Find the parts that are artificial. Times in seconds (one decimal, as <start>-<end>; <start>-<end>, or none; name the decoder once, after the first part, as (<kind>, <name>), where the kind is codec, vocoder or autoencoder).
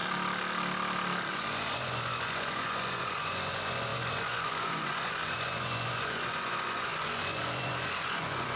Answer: 1.3-8.6 (vocoder, Vocos)